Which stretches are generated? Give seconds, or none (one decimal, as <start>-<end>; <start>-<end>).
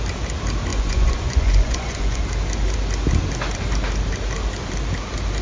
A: 0.7-2.2